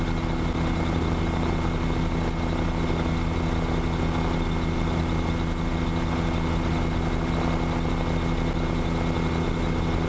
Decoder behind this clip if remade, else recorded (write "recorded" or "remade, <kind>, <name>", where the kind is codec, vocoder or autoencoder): recorded